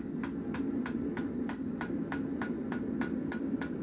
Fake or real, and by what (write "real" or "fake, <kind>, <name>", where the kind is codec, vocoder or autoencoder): real